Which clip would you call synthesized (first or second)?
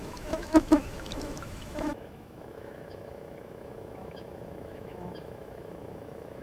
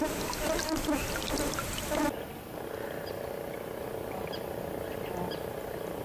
first